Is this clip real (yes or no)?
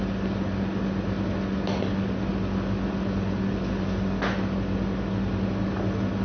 yes